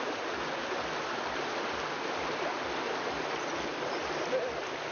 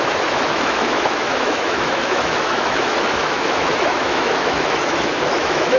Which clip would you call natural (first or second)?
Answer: first